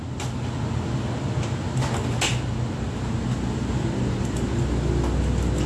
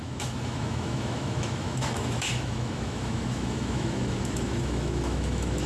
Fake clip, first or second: second